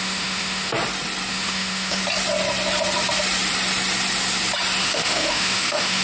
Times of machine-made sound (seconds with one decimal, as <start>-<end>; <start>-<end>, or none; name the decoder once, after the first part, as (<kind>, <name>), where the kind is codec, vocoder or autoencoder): 0.0-0.7 (autoencoder, DAC-VAE); 1.3-2.0; 4.8-6.0